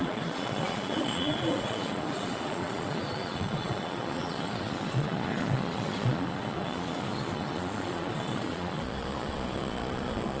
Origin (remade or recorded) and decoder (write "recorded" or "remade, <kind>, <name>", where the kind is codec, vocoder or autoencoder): remade, vocoder, Vocos